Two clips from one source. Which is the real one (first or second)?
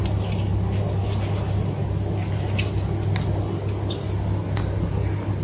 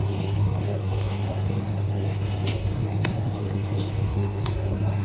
first